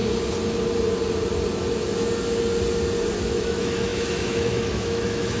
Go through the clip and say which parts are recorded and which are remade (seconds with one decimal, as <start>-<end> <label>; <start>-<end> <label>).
0.0-3.2 recorded; 3.2-5.4 remade